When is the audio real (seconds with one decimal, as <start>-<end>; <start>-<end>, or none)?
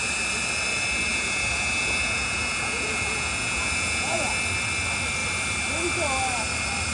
0.0-1.1; 4.3-6.9